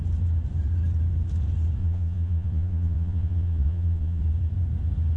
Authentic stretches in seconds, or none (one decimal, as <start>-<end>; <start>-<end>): 0.0-1.8; 4.2-5.2